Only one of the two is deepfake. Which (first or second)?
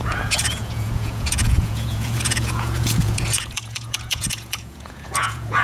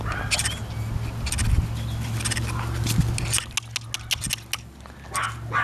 first